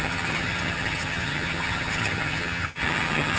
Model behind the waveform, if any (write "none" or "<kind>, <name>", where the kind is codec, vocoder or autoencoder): vocoder, HiFi-GAN